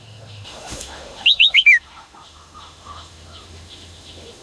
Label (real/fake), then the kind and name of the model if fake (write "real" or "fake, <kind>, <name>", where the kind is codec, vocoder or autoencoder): fake, autoencoder, DAC-VAE